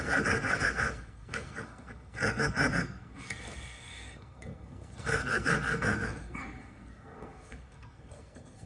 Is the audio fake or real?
fake